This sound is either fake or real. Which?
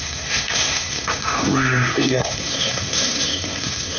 fake